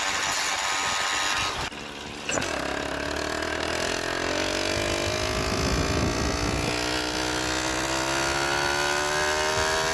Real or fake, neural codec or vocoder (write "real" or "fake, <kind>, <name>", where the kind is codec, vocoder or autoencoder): real